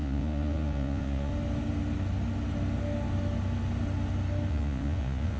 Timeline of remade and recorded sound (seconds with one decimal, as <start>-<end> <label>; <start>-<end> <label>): 0.0-1.3 remade; 1.3-4.5 recorded; 4.5-5.4 remade